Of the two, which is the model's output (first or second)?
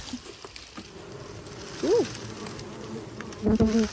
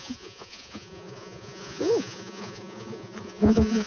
second